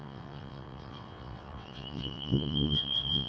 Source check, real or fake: fake